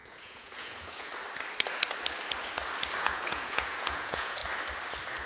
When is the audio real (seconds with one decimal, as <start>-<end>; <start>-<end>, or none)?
1.1-3.0; 4.4-5.3